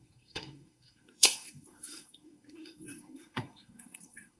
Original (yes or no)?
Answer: no